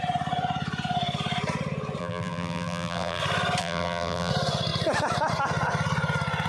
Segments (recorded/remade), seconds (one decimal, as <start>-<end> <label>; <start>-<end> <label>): 0.0-2.0 recorded; 2.0-3.2 remade; 3.2-3.6 recorded; 3.6-4.3 remade; 4.3-6.5 recorded